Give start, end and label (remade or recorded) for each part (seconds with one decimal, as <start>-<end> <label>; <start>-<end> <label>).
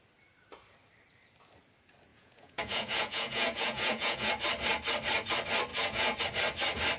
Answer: 0.0-2.1 recorded; 2.1-4.3 remade; 4.3-5.7 recorded; 5.7-6.2 remade; 6.2-7.0 recorded